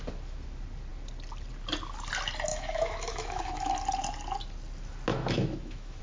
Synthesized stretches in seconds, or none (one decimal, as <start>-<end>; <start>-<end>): 2.5-3.7; 5.1-6.0